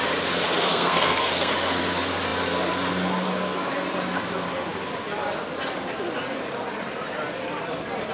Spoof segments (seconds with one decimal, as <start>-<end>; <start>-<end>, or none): 0.7-1.5